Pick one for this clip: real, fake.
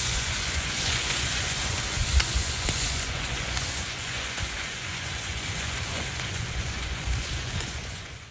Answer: fake